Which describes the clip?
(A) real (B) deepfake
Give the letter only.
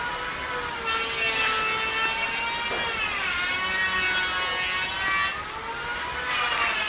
A